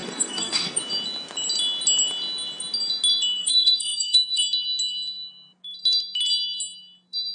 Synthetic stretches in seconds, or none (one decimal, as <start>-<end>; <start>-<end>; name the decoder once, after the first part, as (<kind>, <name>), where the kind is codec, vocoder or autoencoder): 0.0-0.8 (codec, SNAC); 3.4-4.4